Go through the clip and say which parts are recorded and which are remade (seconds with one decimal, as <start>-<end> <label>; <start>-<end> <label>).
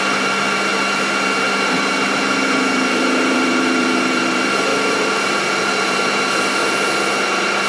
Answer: 0.0-6.6 remade; 6.6-7.3 recorded; 7.3-7.7 remade